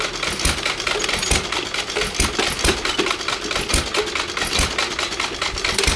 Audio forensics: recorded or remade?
recorded